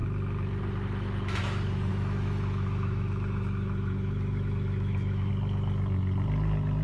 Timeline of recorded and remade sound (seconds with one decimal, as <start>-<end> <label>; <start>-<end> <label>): 0.0-1.9 recorded; 1.9-5.3 remade; 5.3-6.8 recorded